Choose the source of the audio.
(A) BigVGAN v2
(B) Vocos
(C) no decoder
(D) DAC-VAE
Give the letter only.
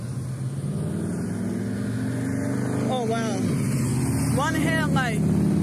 C